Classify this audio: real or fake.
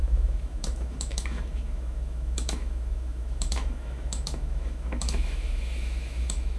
fake